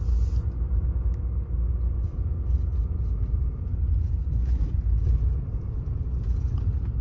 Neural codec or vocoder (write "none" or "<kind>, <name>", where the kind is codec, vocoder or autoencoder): none